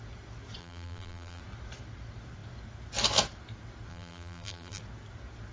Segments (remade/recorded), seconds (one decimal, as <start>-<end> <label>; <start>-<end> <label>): 0.0-0.6 recorded; 0.6-1.4 remade; 1.4-3.9 recorded; 3.9-4.8 remade; 4.8-5.5 recorded